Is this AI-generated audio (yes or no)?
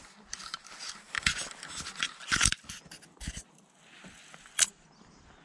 no